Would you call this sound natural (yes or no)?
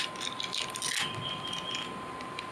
yes